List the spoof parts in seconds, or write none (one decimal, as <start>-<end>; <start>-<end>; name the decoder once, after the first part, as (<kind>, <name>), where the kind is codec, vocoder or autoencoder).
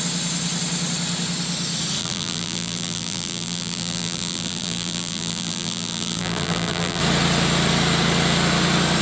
2.0-7.0 (vocoder, BigVGAN v2)